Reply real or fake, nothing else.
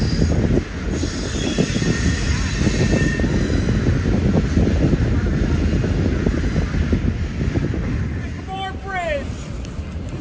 real